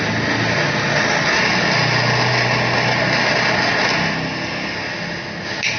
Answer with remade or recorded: recorded